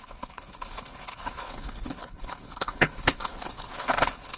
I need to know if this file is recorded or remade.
remade